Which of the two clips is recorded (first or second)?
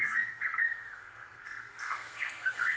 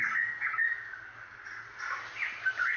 second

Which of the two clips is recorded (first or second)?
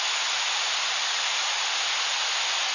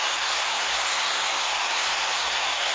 first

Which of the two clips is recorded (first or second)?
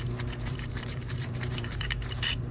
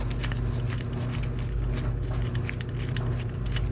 second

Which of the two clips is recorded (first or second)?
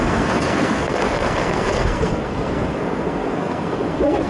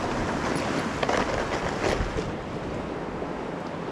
second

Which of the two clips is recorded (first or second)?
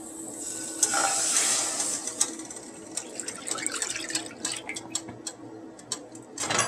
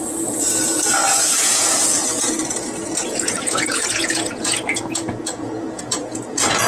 first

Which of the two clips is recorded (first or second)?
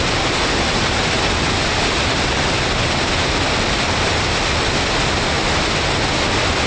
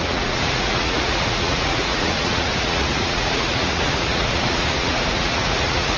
first